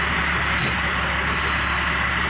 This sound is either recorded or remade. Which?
recorded